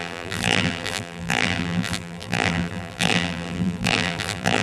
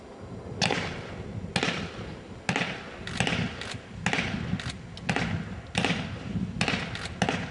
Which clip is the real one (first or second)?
second